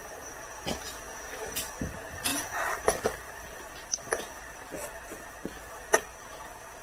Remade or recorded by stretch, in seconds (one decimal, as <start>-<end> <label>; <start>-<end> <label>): 0.0-6.8 recorded